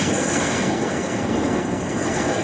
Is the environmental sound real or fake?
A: fake